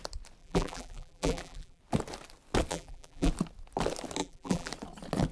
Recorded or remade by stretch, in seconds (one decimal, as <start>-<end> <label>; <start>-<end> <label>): 0.0-0.4 recorded; 0.4-1.8 remade; 1.8-2.7 recorded; 2.7-3.3 remade; 3.3-4.2 recorded; 4.2-4.7 remade; 4.7-5.3 recorded